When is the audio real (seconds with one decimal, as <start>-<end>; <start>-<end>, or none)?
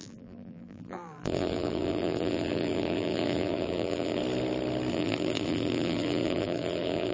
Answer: 4.2-4.9